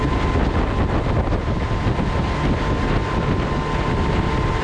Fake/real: real